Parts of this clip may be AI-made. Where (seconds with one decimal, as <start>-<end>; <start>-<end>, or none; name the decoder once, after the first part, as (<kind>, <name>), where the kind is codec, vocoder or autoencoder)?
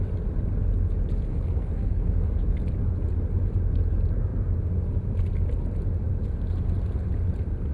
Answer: 1.3-2.3 (codec, SNAC)